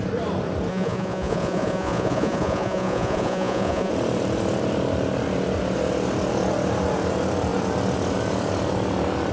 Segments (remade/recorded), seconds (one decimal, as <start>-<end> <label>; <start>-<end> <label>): 0.0-0.7 recorded; 0.7-3.9 remade; 3.9-9.3 recorded

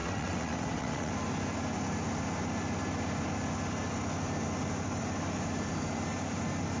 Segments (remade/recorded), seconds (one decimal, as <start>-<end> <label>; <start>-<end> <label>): 0.0-1.1 remade; 1.1-6.8 recorded